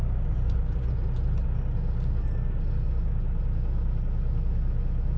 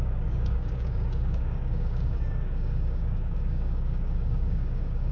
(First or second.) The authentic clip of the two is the first